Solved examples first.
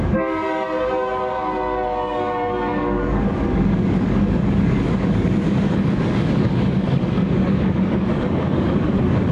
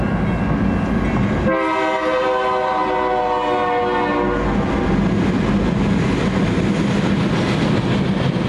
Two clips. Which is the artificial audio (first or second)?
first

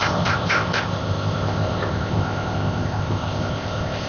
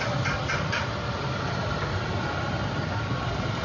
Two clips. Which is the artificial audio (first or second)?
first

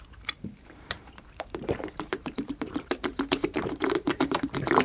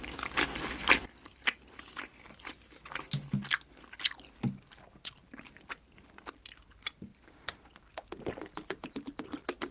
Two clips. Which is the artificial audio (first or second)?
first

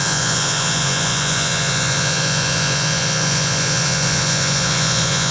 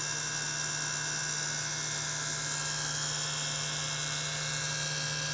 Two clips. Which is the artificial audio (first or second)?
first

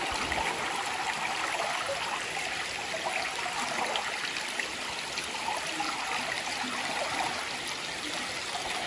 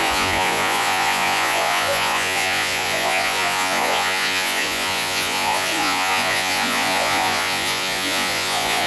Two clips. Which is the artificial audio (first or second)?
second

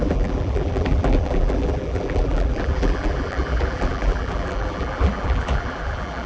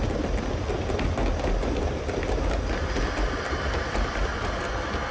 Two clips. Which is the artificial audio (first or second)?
first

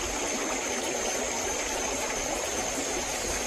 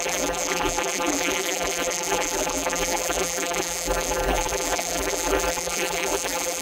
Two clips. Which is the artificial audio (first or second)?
second